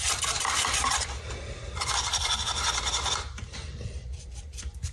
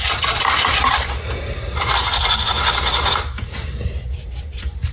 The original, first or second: second